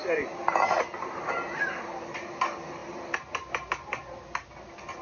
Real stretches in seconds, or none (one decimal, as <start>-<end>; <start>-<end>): 0.0-5.0